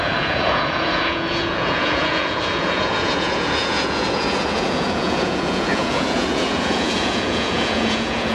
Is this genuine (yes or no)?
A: no